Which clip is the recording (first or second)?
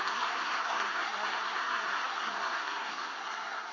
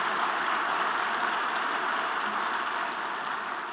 second